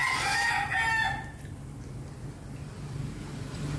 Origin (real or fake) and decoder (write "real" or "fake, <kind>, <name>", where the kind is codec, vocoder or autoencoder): real